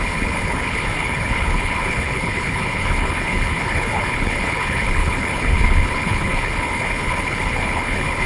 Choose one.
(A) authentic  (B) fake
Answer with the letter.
B